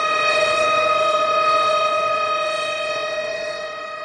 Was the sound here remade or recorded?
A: remade